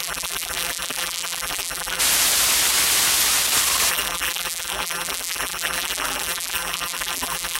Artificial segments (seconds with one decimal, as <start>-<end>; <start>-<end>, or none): 0.0-2.0; 3.9-7.6